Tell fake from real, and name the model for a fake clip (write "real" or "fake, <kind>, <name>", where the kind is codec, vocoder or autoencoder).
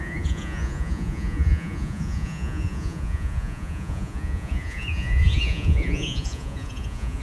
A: fake, vocoder, Vocos